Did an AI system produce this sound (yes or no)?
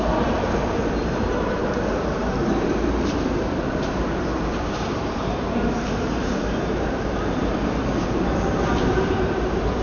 yes